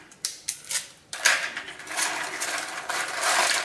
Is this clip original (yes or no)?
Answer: no